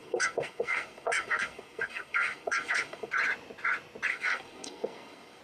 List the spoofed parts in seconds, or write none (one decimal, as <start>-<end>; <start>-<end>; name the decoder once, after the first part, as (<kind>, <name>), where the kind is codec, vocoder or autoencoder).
0.0-3.1 (codec, SNAC); 4.1-5.4